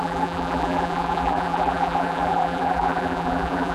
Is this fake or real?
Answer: fake